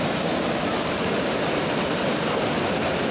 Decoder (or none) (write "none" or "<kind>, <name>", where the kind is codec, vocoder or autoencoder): none